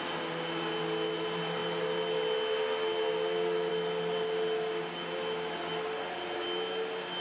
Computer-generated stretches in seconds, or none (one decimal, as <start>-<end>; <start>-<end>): none